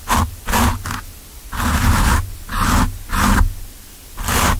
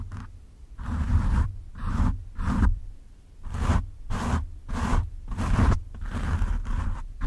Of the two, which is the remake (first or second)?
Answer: second